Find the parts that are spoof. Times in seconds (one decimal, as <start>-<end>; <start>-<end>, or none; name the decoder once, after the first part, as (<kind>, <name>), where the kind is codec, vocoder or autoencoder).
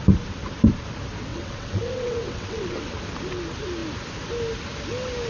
1.3-2.9 (vocoder, WaveNeXt)